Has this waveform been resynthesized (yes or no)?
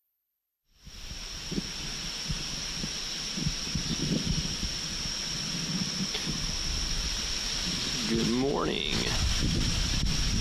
no